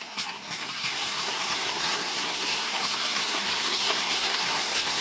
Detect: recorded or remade remade